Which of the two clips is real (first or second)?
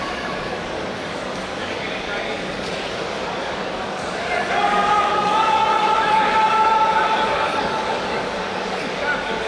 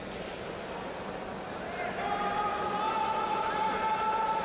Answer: second